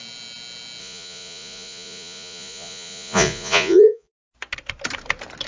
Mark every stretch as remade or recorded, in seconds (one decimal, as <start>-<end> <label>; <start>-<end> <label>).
0.0-0.8 recorded; 0.8-4.1 remade; 4.1-5.5 recorded